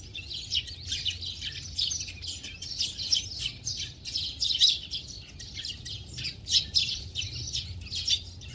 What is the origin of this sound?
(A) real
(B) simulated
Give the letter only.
A